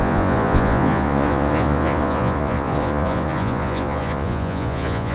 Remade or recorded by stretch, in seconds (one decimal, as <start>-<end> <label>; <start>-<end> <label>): 0.0-5.1 remade